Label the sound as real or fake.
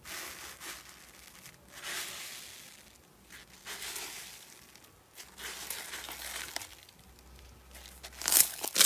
real